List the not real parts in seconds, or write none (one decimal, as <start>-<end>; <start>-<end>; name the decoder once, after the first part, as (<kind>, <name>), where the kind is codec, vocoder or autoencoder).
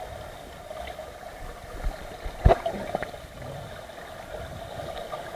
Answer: 1.3-4.5 (vocoder, BigVGAN v2)